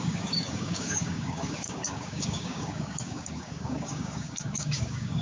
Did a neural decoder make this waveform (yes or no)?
yes